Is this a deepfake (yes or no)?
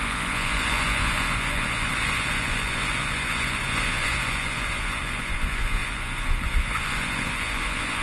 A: yes